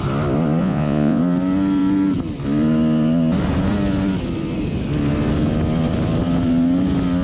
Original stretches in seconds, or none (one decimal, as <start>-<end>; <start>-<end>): 0.0-0.6; 1.2-7.2